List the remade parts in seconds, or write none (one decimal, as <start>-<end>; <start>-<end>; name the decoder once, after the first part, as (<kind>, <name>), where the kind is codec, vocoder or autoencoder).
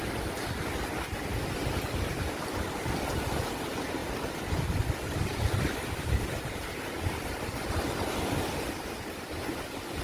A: none